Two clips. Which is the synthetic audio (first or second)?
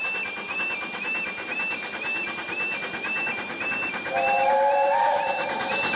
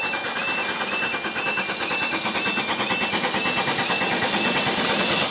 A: first